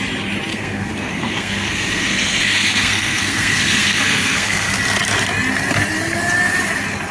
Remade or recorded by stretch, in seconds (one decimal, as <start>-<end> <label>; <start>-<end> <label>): 0.0-0.5 recorded; 0.5-4.7 remade; 4.7-7.1 recorded

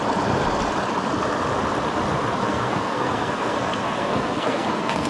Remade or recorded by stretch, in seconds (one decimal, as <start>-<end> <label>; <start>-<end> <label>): 0.0-2.4 recorded; 2.4-5.1 remade

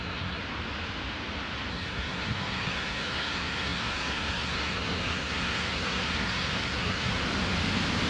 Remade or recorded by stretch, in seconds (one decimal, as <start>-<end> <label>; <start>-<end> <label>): 0.0-0.4 remade; 0.4-1.7 recorded; 1.7-7.2 remade; 7.2-8.1 recorded

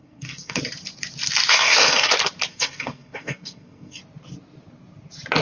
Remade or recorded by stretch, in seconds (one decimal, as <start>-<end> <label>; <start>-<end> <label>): 0.0-0.6 remade; 0.6-1.5 recorded; 1.5-2.1 remade; 2.1-2.5 recorded; 2.5-4.0 remade; 4.0-5.4 recorded

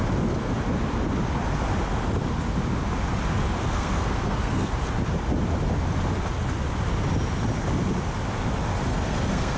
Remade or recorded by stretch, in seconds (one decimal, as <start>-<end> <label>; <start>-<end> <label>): 0.0-3.6 recorded; 3.6-4.7 remade; 4.7-8.9 recorded; 8.9-9.6 remade

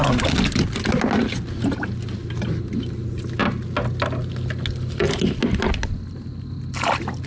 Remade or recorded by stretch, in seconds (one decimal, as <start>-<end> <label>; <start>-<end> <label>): 0.0-7.3 recorded